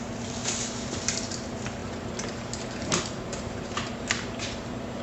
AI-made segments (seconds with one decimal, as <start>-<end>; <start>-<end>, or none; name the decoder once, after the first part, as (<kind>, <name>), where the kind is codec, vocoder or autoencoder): 0.4-1.0 (vocoder, BigVGAN v2); 1.8-5.0